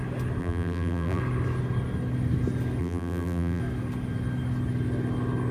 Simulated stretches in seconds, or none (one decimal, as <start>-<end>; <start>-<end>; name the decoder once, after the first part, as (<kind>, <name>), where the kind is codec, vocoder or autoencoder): 0.4-1.2 (vocoder, BigVGAN v2); 2.8-3.6